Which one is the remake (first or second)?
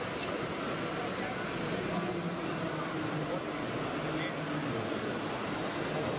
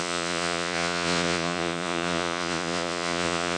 second